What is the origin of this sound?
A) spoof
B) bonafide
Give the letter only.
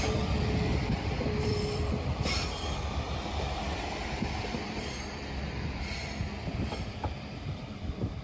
A